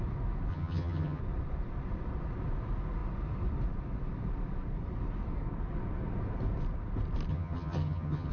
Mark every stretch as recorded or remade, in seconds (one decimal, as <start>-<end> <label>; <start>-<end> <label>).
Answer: 0.0-0.5 recorded; 0.5-1.2 remade; 1.2-7.3 recorded; 7.3-8.3 remade